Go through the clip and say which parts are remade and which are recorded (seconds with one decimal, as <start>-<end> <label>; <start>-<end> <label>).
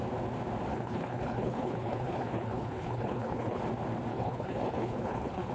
0.0-0.7 recorded; 0.7-3.6 remade; 3.6-4.1 recorded; 4.1-5.5 remade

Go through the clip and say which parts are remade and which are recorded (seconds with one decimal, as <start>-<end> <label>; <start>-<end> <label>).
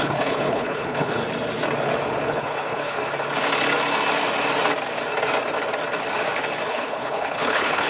0.0-1.2 remade; 1.2-2.3 recorded; 2.3-3.0 remade; 3.0-6.7 recorded; 6.7-7.9 remade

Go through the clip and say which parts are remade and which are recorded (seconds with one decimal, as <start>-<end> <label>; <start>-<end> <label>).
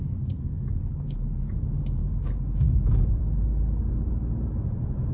0.0-0.8 recorded; 0.8-1.5 remade; 1.5-5.1 recorded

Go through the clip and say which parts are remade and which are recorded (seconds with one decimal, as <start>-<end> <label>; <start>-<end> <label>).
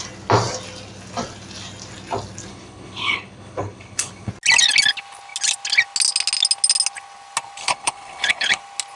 0.0-2.5 recorded; 2.5-4.3 remade; 4.3-7.6 recorded; 7.6-8.6 remade; 8.6-9.0 recorded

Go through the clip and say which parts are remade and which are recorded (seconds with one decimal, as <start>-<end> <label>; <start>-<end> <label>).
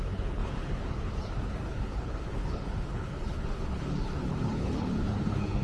0.0-5.6 remade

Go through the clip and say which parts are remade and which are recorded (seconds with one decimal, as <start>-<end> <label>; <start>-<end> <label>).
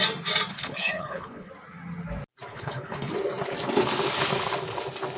0.0-0.5 recorded; 0.5-1.5 remade; 1.5-2.5 recorded; 2.5-3.1 remade; 3.1-5.2 recorded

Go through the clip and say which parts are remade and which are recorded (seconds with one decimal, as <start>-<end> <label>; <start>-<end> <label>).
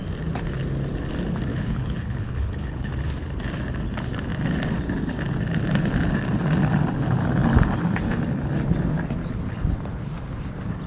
0.0-1.5 recorded; 1.5-2.9 remade; 2.9-10.9 recorded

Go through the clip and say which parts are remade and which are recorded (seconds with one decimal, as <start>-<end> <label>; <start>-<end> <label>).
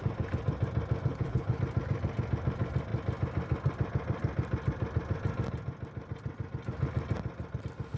0.0-1.1 recorded; 1.1-1.6 remade; 1.6-8.0 recorded